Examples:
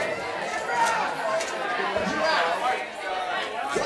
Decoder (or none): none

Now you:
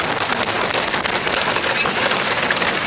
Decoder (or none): none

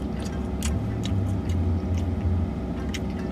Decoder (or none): none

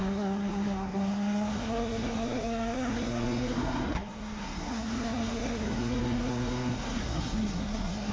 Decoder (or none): codec, SNAC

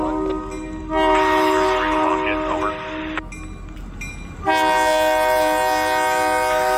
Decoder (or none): none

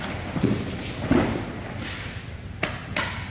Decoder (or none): none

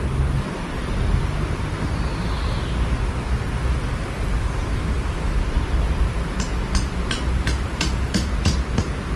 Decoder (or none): none